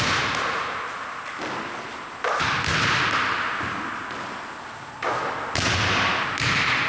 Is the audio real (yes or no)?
yes